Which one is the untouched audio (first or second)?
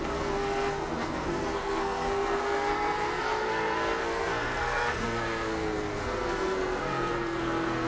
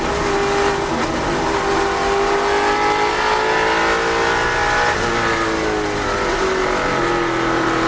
second